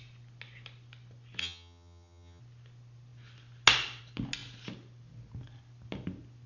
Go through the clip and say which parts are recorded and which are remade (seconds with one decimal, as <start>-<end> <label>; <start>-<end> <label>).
0.0-1.4 recorded; 1.4-2.4 remade; 2.4-6.5 recorded